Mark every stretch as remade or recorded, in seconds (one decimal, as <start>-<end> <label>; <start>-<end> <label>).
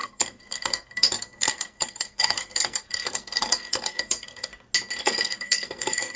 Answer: 0.0-4.5 remade; 4.5-5.0 recorded; 5.0-6.2 remade